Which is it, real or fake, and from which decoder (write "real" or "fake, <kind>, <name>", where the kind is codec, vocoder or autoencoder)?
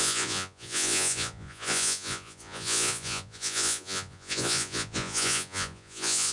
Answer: fake, vocoder, Vocos